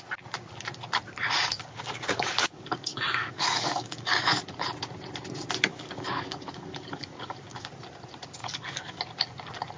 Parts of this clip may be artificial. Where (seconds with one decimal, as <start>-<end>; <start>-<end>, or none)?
1.5-4.4; 5.7-7.7; 8.4-9.0